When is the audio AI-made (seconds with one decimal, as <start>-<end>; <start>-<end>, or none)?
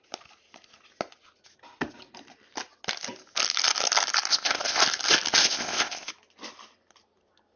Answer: 4.3-4.8; 5.4-6.1